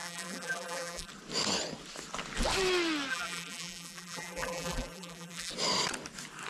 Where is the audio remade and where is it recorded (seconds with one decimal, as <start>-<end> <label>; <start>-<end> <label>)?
0.0-1.1 remade; 1.1-3.1 recorded; 3.1-5.5 remade; 5.5-6.5 recorded